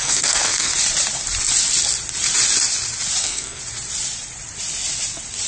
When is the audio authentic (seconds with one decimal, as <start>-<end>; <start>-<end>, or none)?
0.7-3.2; 3.6-5.5

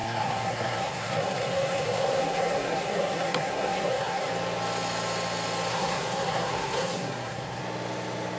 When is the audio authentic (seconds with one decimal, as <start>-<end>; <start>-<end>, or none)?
4.3-5.7; 7.6-8.4

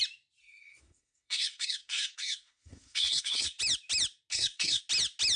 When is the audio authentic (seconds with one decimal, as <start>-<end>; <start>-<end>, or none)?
0.0-0.4; 3.6-4.3; 4.8-5.4

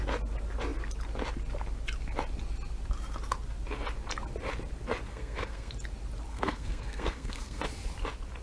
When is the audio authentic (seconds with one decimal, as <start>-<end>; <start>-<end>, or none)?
0.0-5.1; 5.7-6.3; 7.6-8.4

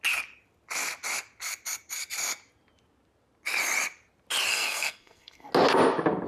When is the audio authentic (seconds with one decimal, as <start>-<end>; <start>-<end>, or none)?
0.0-4.5; 5.5-6.3

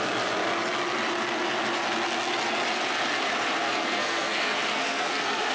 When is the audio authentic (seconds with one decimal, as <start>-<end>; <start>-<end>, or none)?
0.0-3.6

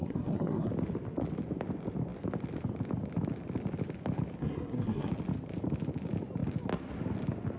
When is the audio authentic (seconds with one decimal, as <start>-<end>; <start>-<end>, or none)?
0.7-4.4; 5.1-7.6